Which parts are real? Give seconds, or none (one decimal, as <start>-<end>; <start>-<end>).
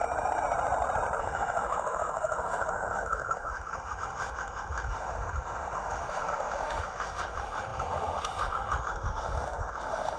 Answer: 0.0-1.2